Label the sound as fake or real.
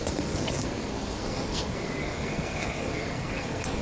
fake